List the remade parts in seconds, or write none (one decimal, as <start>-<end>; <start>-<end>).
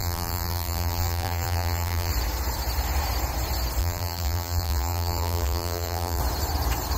0.0-2.1; 3.8-6.2